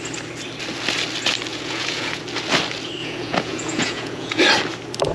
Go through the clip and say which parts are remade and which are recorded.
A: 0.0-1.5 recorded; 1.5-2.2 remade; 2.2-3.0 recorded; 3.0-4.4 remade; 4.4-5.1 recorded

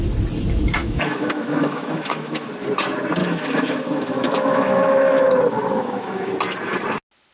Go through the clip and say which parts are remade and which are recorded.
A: 0.0-0.8 recorded; 0.8-2.5 remade; 2.5-3.2 recorded; 3.2-5.3 remade; 5.3-5.8 recorded; 5.8-6.3 remade; 6.3-7.3 recorded

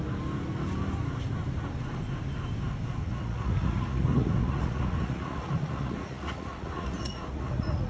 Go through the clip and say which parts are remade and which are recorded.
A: 0.0-3.0 recorded; 3.0-7.9 remade

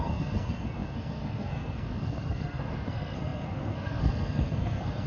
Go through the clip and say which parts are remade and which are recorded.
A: 0.0-5.1 remade

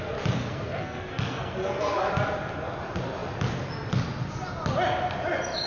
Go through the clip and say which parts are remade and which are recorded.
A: 0.0-0.4 recorded; 0.4-2.1 remade; 2.1-5.7 recorded

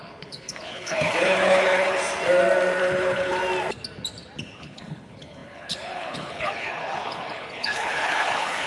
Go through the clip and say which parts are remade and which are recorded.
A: 0.0-2.0 remade; 2.0-2.8 recorded; 2.8-3.4 remade; 3.4-4.4 recorded; 4.4-8.7 remade

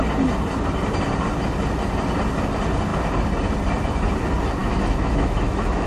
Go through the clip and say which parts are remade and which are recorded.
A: 0.0-4.6 recorded; 4.6-5.9 remade